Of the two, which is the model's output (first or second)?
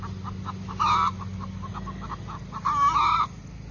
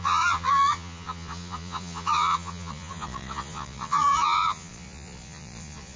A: second